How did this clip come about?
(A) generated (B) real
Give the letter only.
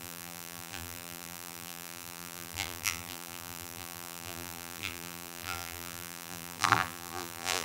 A